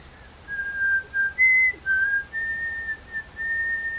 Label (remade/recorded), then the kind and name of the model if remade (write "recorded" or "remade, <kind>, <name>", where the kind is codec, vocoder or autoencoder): recorded